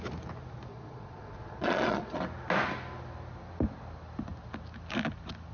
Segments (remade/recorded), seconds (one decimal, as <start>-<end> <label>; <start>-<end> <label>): 0.0-0.7 recorded; 0.7-2.2 remade; 2.2-5.5 recorded